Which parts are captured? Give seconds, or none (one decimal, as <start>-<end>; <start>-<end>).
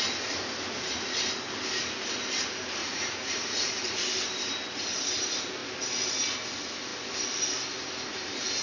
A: 0.0-2.8; 4.0-8.6